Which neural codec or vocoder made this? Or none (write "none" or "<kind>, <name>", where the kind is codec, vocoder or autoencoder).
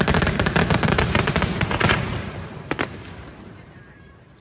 vocoder, BigVGAN v2